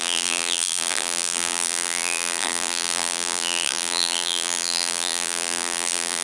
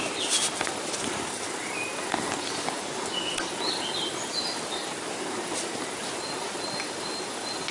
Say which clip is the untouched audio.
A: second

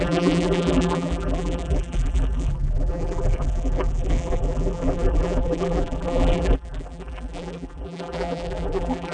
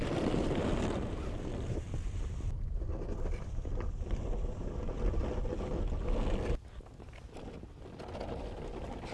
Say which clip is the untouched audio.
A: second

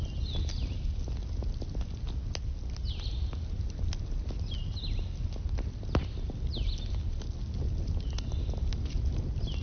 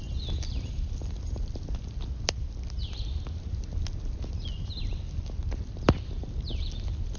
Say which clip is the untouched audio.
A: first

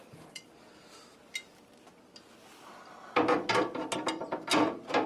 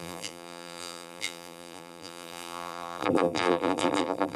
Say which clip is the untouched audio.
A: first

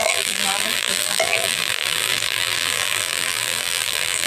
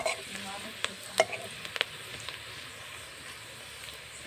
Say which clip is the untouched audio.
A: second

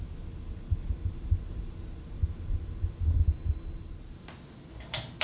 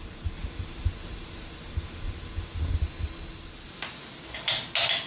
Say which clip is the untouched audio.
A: second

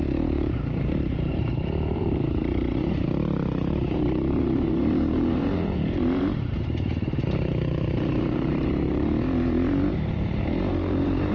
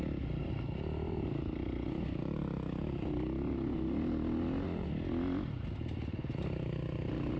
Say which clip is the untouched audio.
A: second